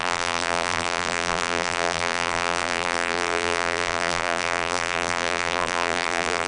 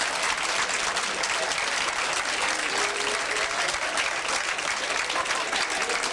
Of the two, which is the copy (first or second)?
first